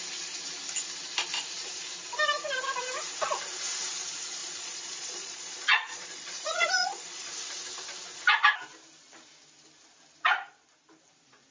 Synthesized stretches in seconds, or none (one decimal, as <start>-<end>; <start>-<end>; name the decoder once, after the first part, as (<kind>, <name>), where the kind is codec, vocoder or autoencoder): 4.4-7.3 (vocoder, Vocos)